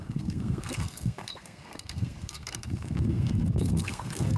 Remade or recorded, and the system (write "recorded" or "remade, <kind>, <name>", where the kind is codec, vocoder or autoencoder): remade, codec, SNAC